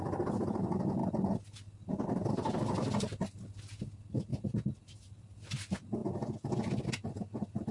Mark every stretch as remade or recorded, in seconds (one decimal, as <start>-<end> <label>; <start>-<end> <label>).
0.0-4.3 recorded; 4.3-5.4 remade; 5.4-7.7 recorded